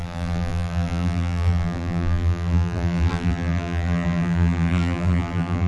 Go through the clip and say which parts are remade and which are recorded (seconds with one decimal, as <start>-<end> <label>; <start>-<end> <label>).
0.0-5.7 remade